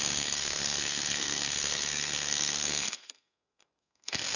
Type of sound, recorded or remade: remade